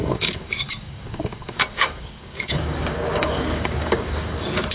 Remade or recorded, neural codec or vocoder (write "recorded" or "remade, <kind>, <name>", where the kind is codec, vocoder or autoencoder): remade, codec, DAC